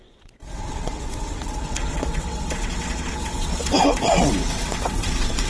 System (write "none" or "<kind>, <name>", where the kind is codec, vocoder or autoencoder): vocoder, WaveNeXt